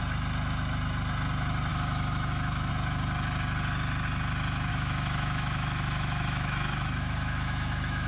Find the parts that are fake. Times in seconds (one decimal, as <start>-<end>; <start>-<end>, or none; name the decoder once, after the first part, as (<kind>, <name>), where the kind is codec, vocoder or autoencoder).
1.7-2.7 (autoencoder, DAC-VAE); 4.7-8.1